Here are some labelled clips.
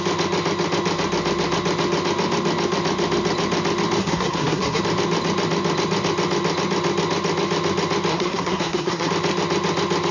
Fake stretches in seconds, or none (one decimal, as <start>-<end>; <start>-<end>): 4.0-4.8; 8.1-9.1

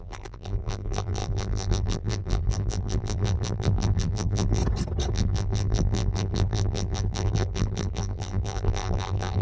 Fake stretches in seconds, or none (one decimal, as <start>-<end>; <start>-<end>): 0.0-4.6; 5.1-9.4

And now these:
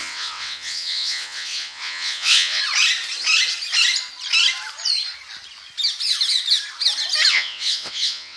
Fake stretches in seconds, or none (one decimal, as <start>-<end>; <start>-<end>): 0.0-2.6; 7.3-8.4

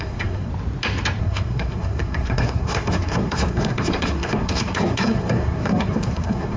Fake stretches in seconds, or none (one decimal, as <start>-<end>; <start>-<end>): 0.0-0.5; 1.2-6.6